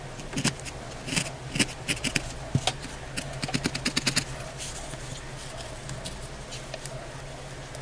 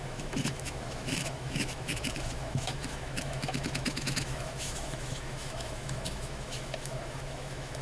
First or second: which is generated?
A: second